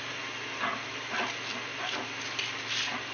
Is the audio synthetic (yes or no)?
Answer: no